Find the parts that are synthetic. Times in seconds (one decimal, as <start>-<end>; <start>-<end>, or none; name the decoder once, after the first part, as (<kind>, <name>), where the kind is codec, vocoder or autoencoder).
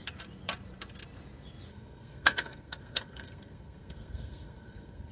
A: 1.7-5.1 (codec, SNAC)